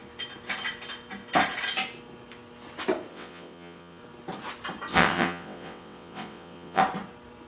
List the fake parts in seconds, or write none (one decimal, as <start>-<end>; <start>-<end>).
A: 3.1-4.0; 4.9-6.8